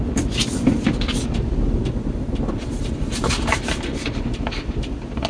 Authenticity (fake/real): real